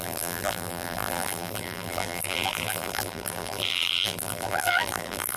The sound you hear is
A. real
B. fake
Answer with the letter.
B